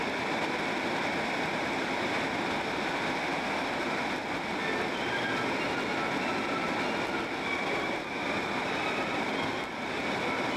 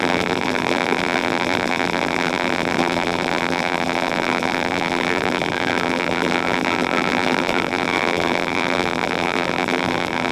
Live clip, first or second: first